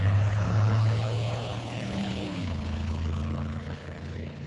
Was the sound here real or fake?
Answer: fake